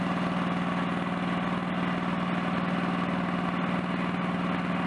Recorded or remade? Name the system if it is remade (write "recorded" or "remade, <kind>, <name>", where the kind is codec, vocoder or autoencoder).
recorded